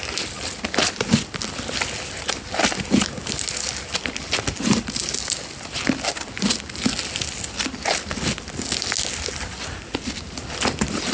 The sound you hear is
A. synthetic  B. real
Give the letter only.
B